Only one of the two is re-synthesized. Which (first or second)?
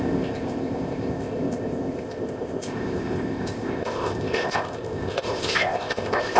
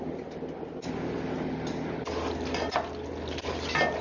first